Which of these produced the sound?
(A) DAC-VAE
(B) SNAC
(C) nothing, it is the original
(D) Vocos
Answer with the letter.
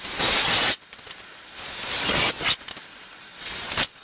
C